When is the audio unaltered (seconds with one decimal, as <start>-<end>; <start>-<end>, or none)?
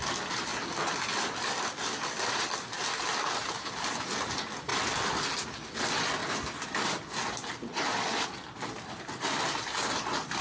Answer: 0.0-10.4